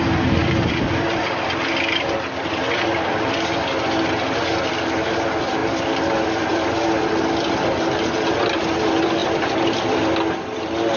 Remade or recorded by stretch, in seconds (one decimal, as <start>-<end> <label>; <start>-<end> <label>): 0.0-0.4 recorded; 0.4-3.8 remade; 3.8-5.6 recorded; 5.6-7.0 remade; 7.0-9.2 recorded; 9.2-9.8 remade; 9.8-11.0 recorded